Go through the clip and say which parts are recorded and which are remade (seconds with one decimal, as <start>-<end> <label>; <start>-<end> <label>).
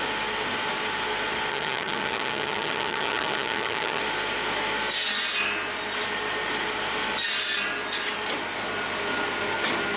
0.0-1.5 recorded; 1.5-4.0 remade; 4.0-10.0 recorded